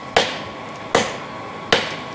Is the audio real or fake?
real